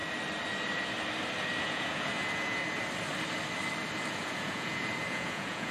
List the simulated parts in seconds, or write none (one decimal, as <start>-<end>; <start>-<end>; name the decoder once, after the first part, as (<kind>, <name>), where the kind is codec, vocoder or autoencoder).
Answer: 1.6-2.6 (vocoder, Vocos); 4.1-5.7